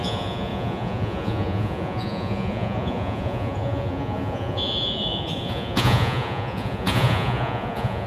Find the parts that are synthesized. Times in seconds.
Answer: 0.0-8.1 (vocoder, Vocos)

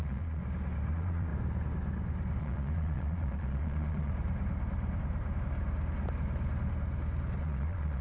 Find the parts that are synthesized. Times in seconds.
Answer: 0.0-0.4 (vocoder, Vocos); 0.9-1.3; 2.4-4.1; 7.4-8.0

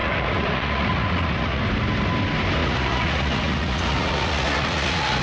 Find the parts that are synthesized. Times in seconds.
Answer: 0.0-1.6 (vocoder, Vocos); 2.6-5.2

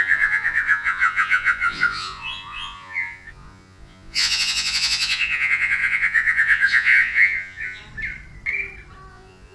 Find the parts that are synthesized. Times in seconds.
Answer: 0.0-7.8 (vocoder, Vocos); 9.1-9.5